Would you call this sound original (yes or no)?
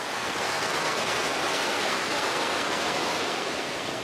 no